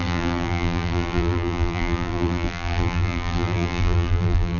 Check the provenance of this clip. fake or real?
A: fake